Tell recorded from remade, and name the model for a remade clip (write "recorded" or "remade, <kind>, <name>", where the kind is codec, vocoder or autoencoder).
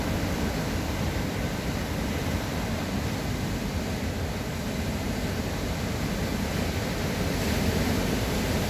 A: recorded